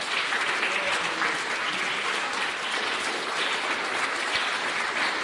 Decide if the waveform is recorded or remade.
recorded